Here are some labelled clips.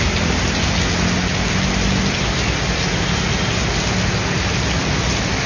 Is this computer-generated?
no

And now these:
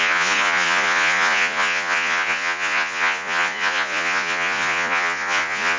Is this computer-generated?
yes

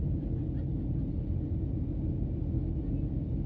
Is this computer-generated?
no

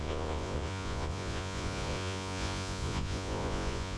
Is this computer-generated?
yes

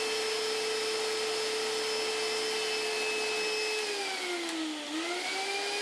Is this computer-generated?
no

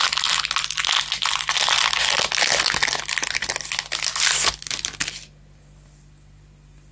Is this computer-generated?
no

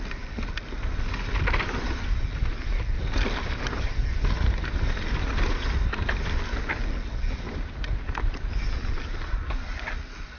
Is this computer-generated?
no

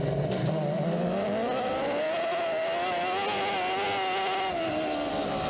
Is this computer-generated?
no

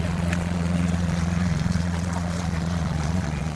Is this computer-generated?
yes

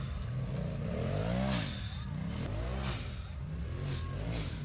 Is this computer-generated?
no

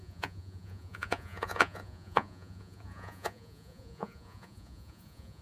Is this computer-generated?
yes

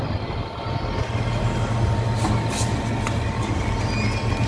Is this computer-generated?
no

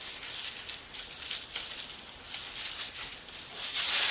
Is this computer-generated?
no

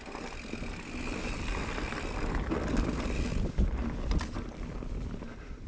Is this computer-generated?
no